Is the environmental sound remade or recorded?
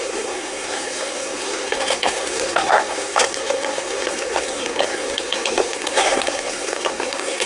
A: remade